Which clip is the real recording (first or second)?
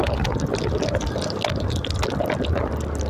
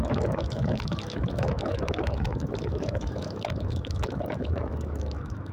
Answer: first